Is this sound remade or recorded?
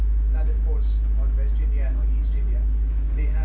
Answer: recorded